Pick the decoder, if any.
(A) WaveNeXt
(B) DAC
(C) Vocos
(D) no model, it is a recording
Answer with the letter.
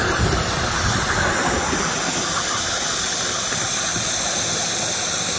D